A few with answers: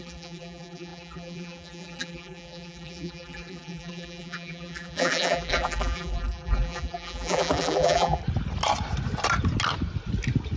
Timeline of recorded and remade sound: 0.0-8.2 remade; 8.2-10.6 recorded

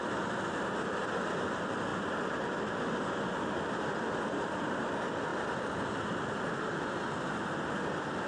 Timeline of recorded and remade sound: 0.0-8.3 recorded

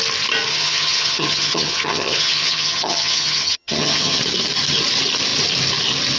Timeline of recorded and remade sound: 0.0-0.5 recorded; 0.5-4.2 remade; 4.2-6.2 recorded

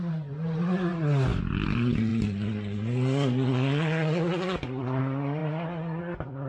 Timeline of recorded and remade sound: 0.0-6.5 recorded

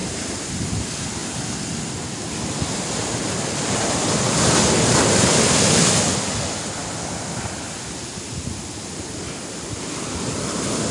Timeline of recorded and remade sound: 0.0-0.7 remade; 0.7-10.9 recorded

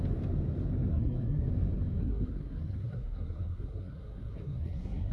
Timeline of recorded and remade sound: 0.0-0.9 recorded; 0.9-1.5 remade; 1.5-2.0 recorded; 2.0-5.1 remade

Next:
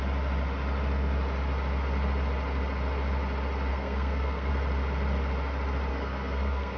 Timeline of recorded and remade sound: 0.0-3.7 recorded; 3.7-4.5 remade; 4.5-5.9 recorded; 5.9-6.8 remade

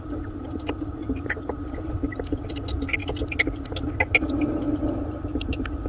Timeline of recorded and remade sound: 0.0-1.0 recorded; 1.0-1.9 remade; 1.9-5.9 recorded